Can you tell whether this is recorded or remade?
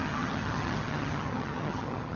remade